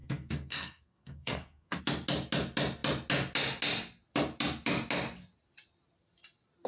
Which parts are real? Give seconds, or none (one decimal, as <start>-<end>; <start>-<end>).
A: 1.8-6.7